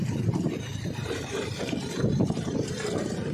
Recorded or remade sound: remade